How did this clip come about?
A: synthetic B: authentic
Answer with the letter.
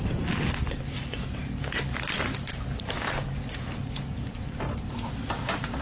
B